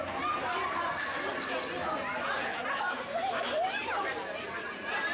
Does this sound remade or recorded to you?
recorded